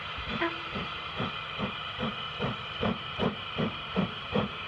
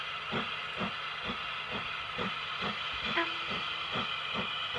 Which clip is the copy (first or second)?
first